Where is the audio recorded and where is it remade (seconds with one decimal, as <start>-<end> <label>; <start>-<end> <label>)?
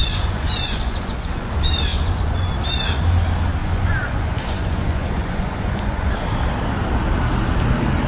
0.0-1.5 remade; 1.5-1.9 recorded; 1.9-2.5 remade; 2.5-3.6 recorded; 3.6-6.1 remade; 6.1-8.1 recorded